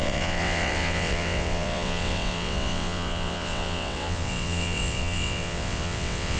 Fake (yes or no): yes